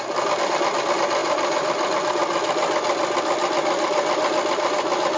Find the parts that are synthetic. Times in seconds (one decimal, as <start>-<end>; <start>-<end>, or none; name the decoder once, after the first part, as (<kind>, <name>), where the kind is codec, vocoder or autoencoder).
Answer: none